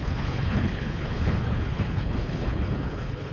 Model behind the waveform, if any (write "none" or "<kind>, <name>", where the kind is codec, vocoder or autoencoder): codec, HILCodec